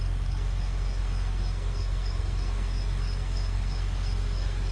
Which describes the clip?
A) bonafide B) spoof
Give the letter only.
B